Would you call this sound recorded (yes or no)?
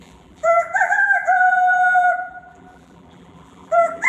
no